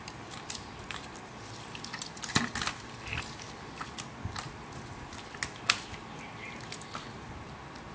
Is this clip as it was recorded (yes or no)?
yes